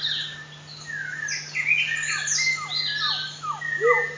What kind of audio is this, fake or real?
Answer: real